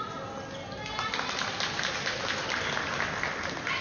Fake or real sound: real